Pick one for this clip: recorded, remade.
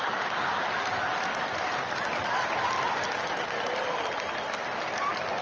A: recorded